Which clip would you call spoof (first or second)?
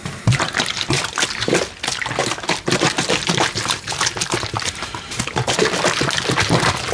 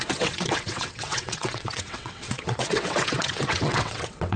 second